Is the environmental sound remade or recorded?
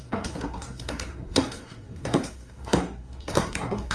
remade